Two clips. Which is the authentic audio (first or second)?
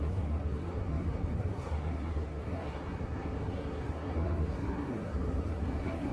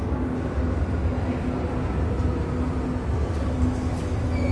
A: second